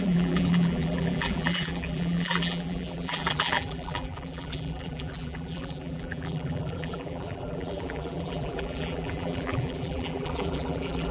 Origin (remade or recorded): remade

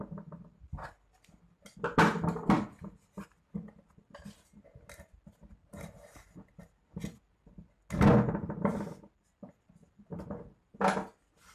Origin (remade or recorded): recorded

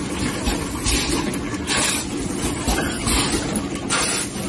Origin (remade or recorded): recorded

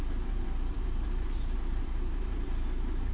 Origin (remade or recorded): remade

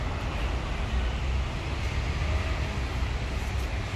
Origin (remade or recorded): recorded